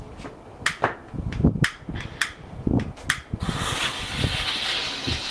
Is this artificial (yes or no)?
no